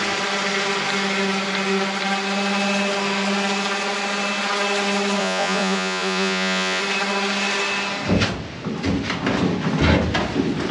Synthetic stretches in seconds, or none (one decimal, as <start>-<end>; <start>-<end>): 5.2-6.8